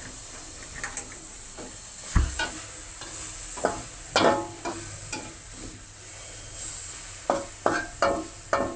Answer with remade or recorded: recorded